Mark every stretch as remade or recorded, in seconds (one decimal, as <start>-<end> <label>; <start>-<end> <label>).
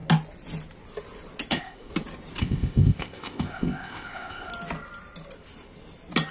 0.0-1.5 recorded; 1.5-1.9 remade; 1.9-2.4 recorded; 2.4-4.5 remade; 4.5-6.3 recorded